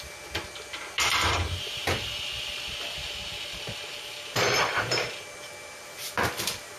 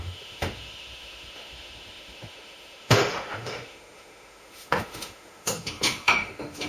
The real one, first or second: first